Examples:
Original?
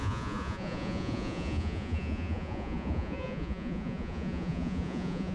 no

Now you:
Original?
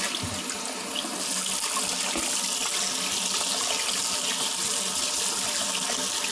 yes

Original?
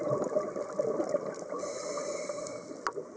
yes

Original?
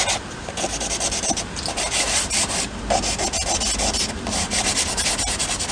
yes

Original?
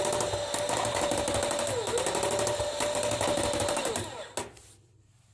yes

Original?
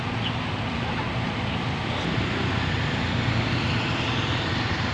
yes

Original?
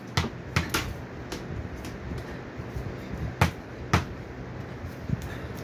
yes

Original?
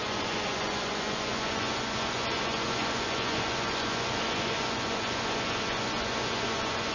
no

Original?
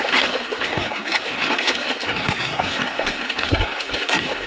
no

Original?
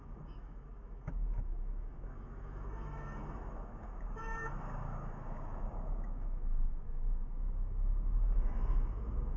no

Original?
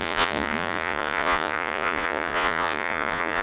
no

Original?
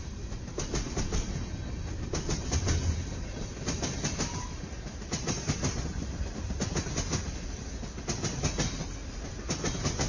yes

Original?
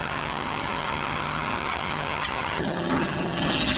no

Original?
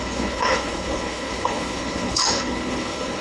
no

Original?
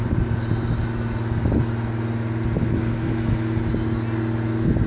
yes